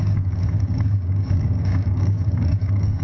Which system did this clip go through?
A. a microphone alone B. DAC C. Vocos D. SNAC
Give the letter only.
B